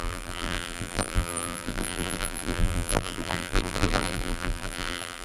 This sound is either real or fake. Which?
fake